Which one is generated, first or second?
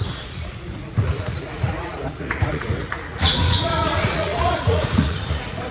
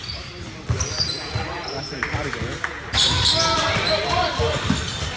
first